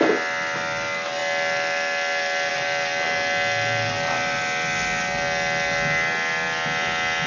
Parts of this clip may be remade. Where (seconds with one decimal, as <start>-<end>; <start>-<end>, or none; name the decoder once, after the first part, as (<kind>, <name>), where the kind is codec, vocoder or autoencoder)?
none